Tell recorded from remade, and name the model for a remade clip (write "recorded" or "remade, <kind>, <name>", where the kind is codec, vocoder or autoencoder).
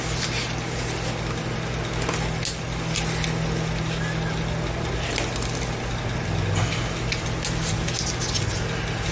recorded